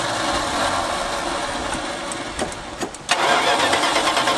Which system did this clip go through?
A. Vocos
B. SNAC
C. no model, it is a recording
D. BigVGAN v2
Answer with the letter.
C